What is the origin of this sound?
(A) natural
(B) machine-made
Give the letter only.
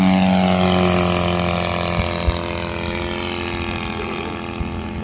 A